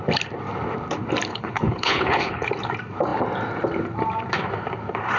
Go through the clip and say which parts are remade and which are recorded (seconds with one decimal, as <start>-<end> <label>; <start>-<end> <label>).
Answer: 0.0-1.3 recorded; 1.3-2.5 remade; 2.5-5.2 recorded